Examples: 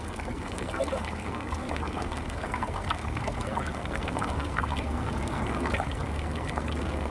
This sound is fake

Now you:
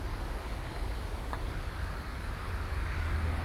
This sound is fake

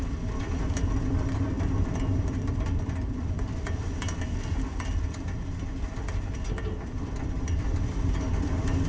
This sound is fake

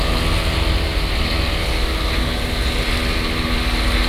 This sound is real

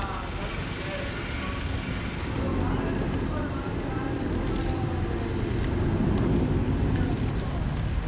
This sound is real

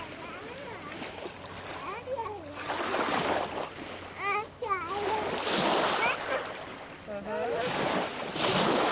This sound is real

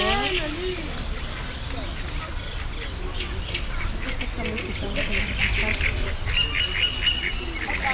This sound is real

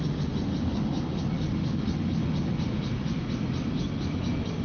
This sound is real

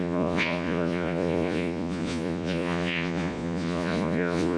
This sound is fake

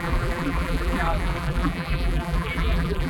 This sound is fake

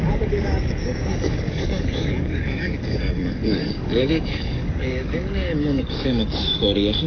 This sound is fake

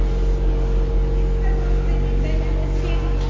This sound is real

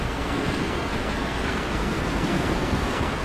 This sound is fake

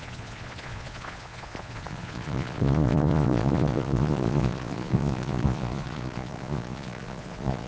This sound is fake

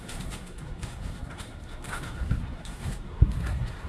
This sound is fake